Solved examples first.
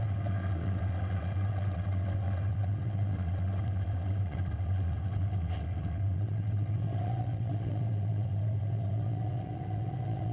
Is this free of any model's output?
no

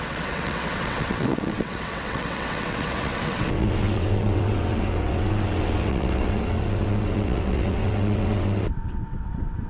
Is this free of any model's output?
no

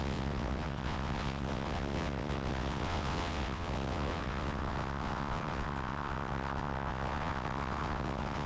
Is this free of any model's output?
no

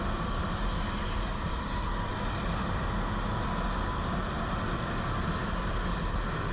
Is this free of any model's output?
yes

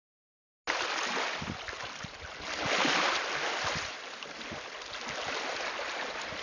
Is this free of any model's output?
yes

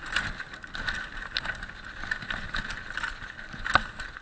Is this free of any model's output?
yes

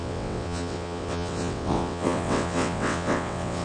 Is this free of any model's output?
no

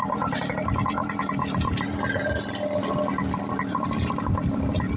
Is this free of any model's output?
yes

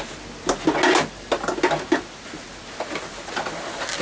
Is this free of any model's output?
yes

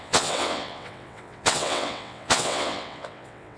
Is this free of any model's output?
no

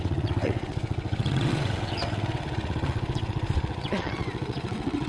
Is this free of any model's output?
no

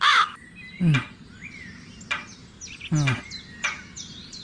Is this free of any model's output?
yes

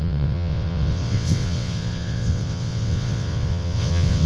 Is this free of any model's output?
no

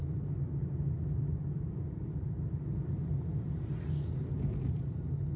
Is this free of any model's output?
yes